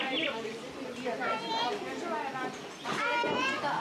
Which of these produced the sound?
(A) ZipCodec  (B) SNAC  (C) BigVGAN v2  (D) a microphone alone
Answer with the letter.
D